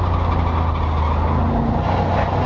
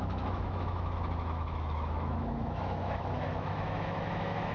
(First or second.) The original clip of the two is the first